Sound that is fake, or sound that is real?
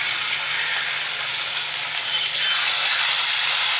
real